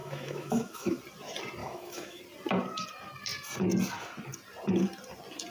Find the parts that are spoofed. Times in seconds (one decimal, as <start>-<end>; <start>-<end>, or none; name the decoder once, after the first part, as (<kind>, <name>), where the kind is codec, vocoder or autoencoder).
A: 0.0-1.0 (autoencoder, DAC-VAE); 1.6-2.2